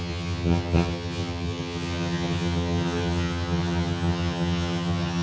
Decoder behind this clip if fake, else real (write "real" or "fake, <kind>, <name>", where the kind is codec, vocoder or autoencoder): fake, vocoder, HiFi-GAN